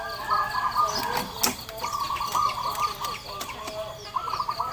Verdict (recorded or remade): recorded